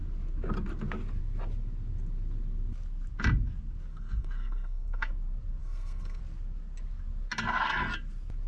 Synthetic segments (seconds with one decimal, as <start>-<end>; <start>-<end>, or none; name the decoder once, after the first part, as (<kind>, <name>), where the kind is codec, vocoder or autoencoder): 3.9-5.1 (codec, SNAC); 5.6-6.2